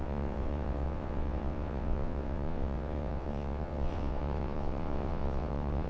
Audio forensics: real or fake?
fake